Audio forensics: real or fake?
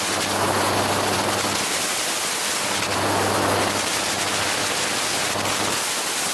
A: real